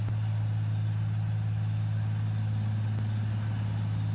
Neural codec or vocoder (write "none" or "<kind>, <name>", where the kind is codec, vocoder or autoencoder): none